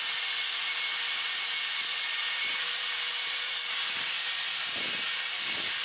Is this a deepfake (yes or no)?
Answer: no